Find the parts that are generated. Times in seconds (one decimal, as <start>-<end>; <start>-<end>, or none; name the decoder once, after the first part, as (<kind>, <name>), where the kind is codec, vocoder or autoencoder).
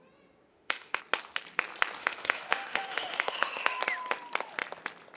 0.5-1.0 (autoencoder, DAC-VAE); 2.0-3.8